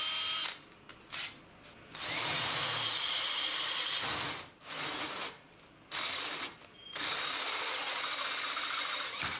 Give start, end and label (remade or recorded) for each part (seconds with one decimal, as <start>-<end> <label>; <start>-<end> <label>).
0.0-9.4 recorded